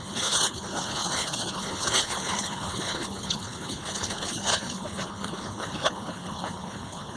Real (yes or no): no